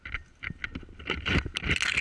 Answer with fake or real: real